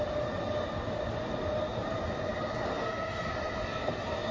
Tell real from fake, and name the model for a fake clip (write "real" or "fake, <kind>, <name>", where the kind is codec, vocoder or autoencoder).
real